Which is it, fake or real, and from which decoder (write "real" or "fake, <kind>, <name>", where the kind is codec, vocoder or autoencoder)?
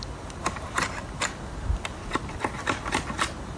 real